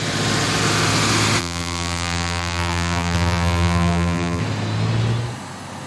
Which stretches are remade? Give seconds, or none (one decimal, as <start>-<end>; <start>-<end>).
1.4-4.4